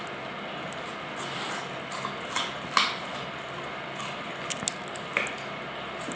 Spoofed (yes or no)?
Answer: no